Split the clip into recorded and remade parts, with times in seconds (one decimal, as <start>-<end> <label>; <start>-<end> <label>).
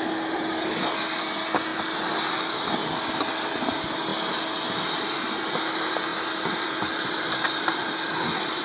0.0-8.6 recorded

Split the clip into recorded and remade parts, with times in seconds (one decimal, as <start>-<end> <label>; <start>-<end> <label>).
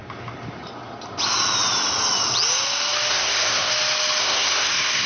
0.0-3.1 recorded; 3.1-3.7 remade; 3.7-4.2 recorded; 4.2-5.1 remade